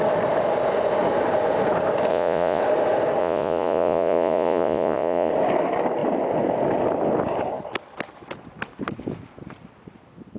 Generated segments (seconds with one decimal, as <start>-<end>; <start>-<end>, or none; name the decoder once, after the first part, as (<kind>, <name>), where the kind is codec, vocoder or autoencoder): 2.1-2.6 (vocoder, Vocos); 3.2-5.3